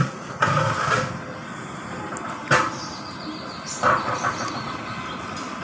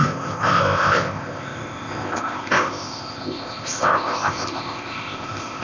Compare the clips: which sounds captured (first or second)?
first